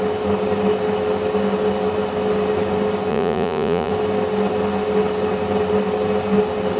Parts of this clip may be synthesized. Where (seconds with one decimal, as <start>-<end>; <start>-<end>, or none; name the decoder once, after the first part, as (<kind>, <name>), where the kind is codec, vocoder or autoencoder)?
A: 3.1-3.9 (vocoder, Vocos)